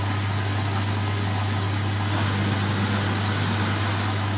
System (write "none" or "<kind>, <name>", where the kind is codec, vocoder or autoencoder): none